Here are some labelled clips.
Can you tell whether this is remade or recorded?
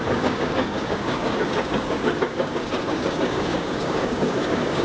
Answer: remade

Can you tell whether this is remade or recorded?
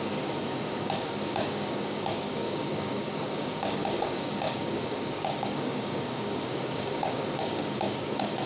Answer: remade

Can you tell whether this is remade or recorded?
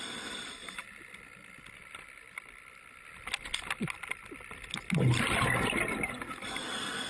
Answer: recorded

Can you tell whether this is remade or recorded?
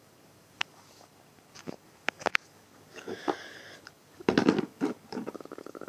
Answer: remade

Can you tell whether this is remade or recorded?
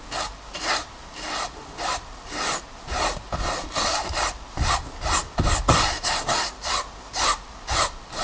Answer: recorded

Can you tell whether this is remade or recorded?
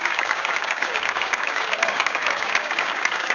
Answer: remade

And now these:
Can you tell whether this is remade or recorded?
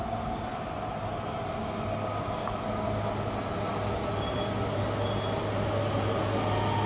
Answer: recorded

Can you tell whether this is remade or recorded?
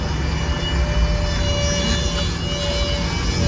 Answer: recorded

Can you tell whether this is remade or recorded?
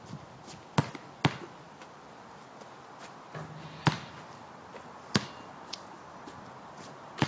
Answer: recorded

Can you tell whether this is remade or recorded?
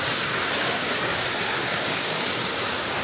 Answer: remade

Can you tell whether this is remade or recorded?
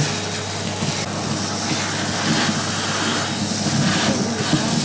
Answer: recorded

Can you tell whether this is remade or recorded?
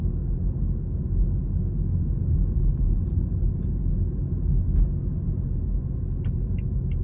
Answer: recorded